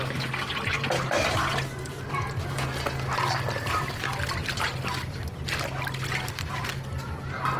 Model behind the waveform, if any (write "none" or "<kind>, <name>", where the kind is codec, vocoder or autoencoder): none